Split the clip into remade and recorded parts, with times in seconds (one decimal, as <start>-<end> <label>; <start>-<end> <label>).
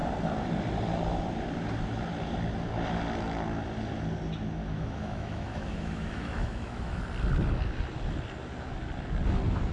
0.0-4.6 recorded; 4.6-7.0 remade; 7.0-9.7 recorded